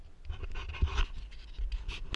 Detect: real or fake real